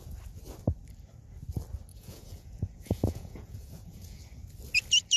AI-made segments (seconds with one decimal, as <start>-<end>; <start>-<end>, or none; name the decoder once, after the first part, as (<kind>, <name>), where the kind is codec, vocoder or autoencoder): 1.9-4.2 (vocoder, Vocos)